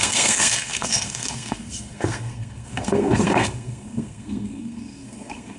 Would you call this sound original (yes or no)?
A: no